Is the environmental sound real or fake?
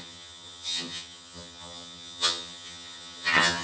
fake